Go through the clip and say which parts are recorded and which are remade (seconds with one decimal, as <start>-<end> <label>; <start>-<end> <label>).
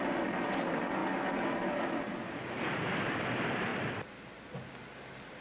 0.0-5.4 recorded